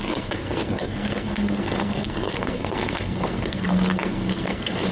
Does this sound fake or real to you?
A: fake